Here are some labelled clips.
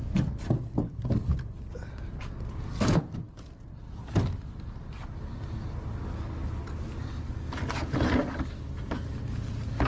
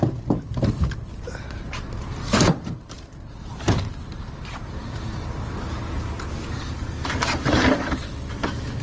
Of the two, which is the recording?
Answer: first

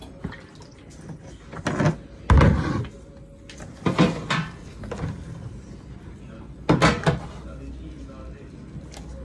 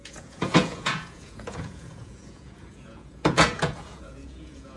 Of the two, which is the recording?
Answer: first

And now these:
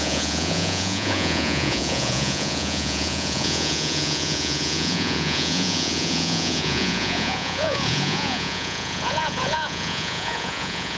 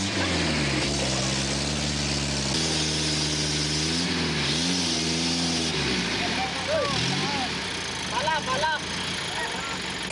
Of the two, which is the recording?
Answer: second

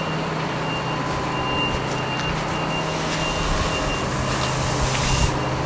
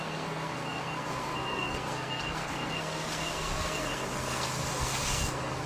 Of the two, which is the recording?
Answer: first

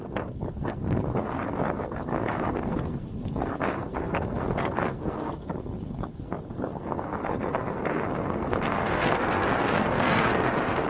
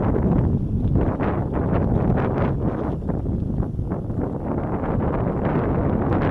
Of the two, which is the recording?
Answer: second